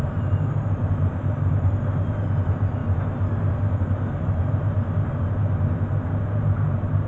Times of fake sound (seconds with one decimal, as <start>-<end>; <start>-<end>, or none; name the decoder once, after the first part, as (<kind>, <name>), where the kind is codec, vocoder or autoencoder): 0.0-2.8 (vocoder, BigVGAN v2); 3.5-7.1